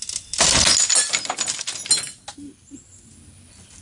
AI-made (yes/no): no